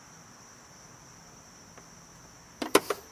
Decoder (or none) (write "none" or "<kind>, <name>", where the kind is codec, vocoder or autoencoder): none